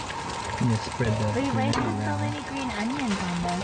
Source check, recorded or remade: recorded